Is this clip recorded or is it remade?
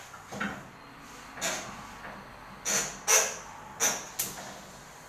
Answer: recorded